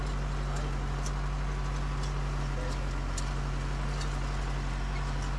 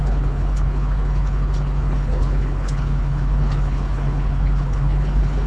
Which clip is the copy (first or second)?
second